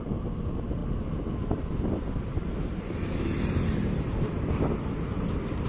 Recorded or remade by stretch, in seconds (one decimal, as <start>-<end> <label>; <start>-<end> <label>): 0.0-5.7 recorded